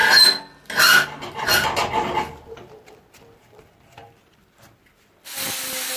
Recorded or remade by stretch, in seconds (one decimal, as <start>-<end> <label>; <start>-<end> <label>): 0.0-6.0 recorded

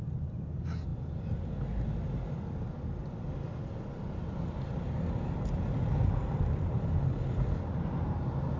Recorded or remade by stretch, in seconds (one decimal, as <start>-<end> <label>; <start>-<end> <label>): 0.0-5.9 recorded; 5.9-7.0 remade; 7.0-8.6 recorded